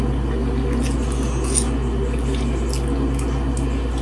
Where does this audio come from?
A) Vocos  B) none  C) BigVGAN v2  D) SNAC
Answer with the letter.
B